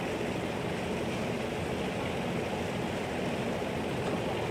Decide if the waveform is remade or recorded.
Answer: recorded